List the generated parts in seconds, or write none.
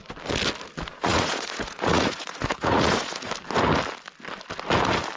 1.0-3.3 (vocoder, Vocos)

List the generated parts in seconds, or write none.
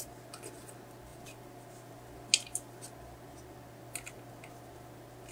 none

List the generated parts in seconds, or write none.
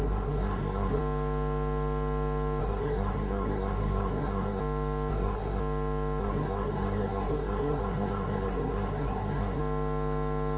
0.0-1.0 (codec, SNAC); 2.6-4.6; 5.1-5.6; 6.2-9.6